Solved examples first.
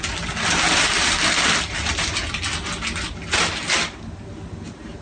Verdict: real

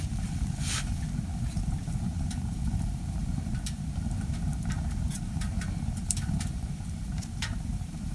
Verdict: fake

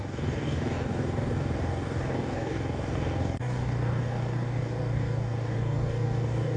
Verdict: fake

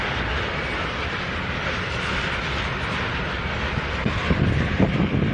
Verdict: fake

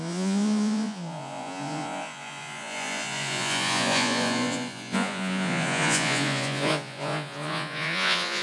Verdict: fake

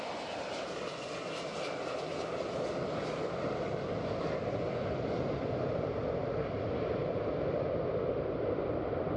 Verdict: real